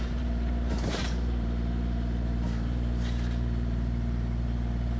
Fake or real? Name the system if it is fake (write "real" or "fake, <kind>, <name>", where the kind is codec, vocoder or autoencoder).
fake, vocoder, BigVGAN v2